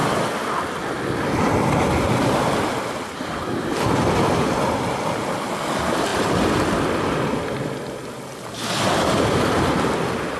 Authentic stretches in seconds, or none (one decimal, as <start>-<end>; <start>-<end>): 0.0-10.4